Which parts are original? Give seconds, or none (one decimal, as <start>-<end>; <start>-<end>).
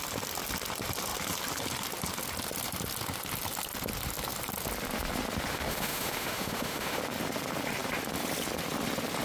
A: 0.0-5.5; 7.0-9.2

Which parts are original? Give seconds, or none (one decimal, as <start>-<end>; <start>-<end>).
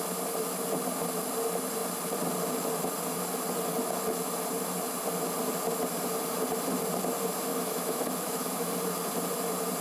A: 0.0-7.5; 8.7-9.8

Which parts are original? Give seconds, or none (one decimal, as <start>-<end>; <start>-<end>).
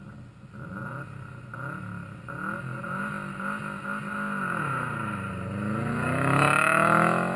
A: 0.0-7.4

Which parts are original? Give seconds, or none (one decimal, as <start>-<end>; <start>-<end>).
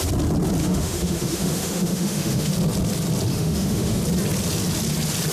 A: 0.0-0.6; 2.5-3.3; 4.0-5.3